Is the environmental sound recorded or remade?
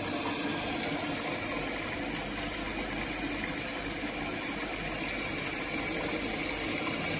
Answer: recorded